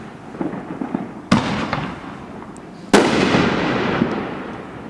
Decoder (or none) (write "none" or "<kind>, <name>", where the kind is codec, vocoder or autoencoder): none